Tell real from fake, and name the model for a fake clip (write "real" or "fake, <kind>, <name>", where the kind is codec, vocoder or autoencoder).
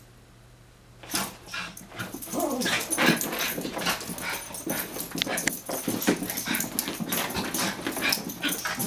real